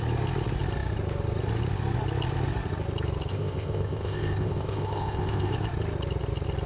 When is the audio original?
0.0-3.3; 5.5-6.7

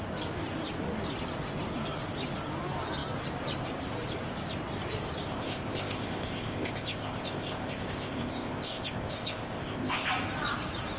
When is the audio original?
0.0-5.3; 10.1-11.0

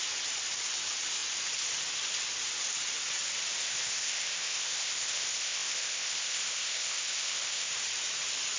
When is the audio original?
0.0-3.6; 7.7-8.6

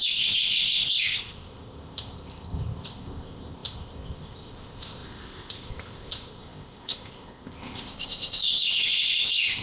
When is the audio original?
none

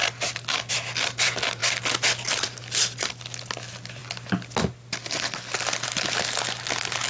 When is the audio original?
0.0-7.1